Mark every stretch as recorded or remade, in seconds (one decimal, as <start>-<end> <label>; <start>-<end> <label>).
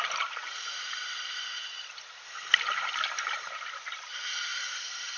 0.0-0.4 remade; 0.4-3.5 recorded; 3.5-5.2 remade